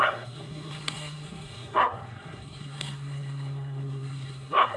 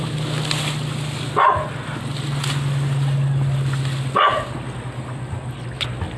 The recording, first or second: second